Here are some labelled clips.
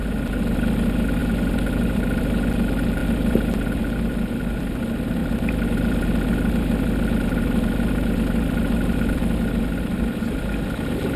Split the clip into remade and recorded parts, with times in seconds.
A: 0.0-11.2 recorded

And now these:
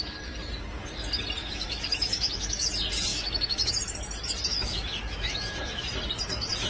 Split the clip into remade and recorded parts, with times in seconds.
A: 0.0-1.4 recorded; 1.4-2.7 remade; 2.7-3.1 recorded; 3.1-3.7 remade; 3.7-4.5 recorded; 4.5-5.8 remade; 5.8-6.7 recorded

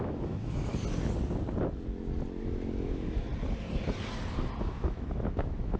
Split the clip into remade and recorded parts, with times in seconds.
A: 0.0-0.7 remade; 0.7-2.4 recorded; 2.4-3.3 remade; 3.3-4.6 recorded; 4.6-5.8 remade

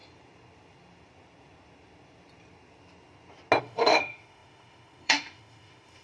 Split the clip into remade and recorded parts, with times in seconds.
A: 0.0-3.6 recorded; 3.6-6.0 remade

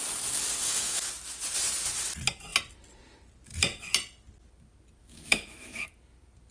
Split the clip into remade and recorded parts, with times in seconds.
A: 0.0-0.6 recorded; 0.6-1.1 remade; 1.1-5.0 recorded; 5.0-5.9 remade; 5.9-6.5 recorded